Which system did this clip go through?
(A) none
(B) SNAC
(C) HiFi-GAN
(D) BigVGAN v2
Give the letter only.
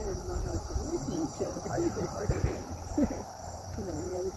D